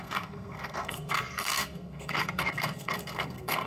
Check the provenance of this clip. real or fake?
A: fake